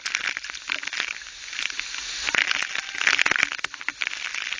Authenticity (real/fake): real